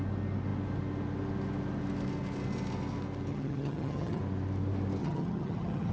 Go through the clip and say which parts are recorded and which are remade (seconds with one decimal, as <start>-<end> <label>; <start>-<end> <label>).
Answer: 0.0-3.3 recorded; 3.3-4.2 remade; 4.2-5.0 recorded; 5.0-5.9 remade